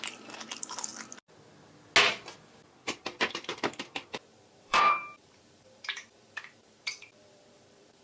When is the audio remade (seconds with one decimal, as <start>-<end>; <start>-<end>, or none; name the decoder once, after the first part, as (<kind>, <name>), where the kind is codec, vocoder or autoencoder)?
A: 0.0-0.9 (vocoder, BigVGAN v2); 4.6-8.0